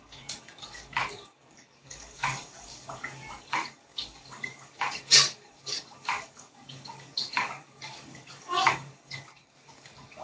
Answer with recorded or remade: remade